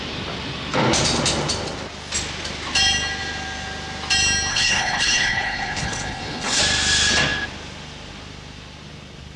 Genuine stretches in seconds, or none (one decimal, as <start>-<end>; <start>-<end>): 0.0-4.5; 6.6-9.4